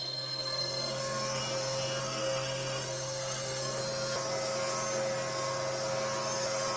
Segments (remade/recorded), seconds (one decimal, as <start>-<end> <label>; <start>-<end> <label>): 0.0-1.4 remade; 1.4-2.0 recorded; 2.0-3.8 remade; 3.8-6.8 recorded